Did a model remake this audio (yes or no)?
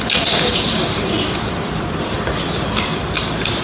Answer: yes